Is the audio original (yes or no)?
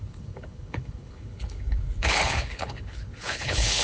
no